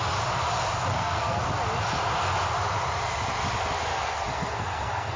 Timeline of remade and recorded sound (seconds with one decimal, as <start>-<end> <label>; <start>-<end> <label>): 0.0-0.9 recorded; 0.9-1.4 remade; 1.4-3.9 recorded; 3.9-5.2 remade